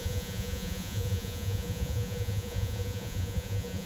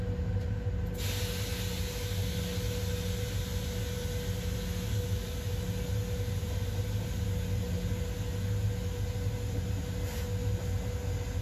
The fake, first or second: first